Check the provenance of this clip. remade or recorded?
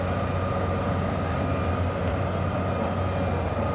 recorded